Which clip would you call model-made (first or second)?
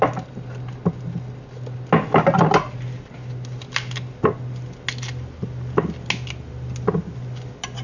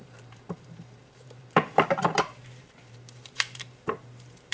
second